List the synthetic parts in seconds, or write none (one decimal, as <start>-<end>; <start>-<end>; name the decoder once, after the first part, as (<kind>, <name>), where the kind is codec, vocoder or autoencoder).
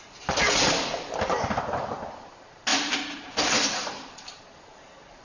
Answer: 2.7-4.4 (vocoder, BigVGAN v2)